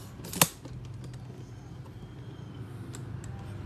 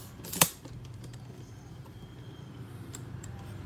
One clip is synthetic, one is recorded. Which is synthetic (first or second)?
second